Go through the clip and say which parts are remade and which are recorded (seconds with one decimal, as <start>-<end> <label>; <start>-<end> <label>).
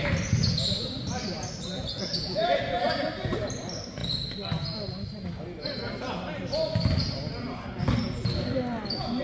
0.0-1.7 recorded; 1.7-2.6 remade; 2.6-9.2 recorded